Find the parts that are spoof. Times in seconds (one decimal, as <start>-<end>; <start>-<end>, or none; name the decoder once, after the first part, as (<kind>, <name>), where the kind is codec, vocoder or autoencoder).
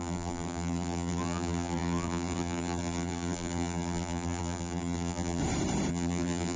0.0-5.4 (vocoder, BigVGAN v2); 5.9-6.6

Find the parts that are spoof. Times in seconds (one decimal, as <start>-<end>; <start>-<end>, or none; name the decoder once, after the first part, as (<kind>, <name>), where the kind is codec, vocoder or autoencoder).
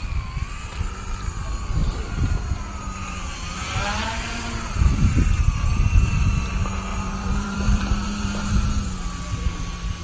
1.8-6.5 (vocoder, BigVGAN v2); 6.9-8.7